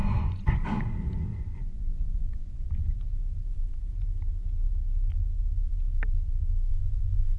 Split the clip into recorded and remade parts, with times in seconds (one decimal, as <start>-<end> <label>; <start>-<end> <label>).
0.0-0.6 remade; 0.6-1.3 recorded; 1.3-3.0 remade; 3.0-6.7 recorded; 6.7-7.4 remade